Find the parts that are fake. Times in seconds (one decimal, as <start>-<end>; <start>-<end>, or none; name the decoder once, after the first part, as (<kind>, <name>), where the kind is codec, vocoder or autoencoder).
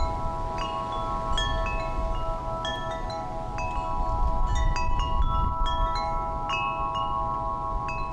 none